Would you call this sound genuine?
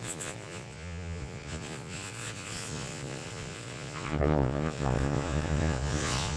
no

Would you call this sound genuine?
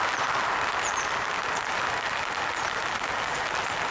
yes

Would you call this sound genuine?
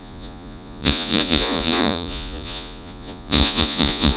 no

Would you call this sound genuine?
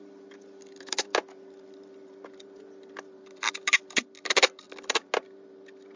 yes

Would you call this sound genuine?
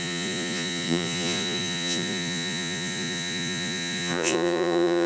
no